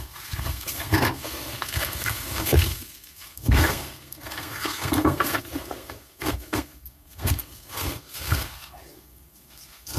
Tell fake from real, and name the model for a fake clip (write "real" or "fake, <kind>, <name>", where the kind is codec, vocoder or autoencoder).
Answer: fake, codec, SNAC